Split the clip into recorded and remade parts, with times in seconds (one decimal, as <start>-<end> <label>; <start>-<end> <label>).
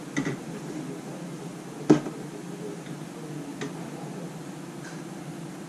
0.0-5.7 recorded